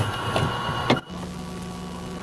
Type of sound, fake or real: real